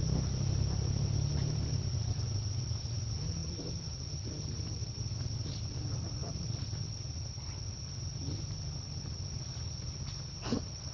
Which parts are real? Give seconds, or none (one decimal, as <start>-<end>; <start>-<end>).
0.0-1.4; 2.3-6.2; 6.8-10.9